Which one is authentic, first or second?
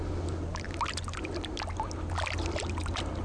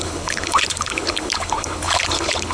first